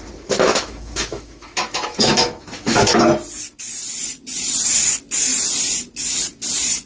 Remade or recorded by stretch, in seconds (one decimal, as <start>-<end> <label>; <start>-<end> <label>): 0.0-3.0 remade; 3.0-6.9 recorded